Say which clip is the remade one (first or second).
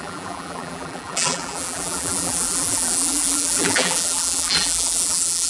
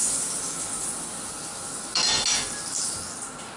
first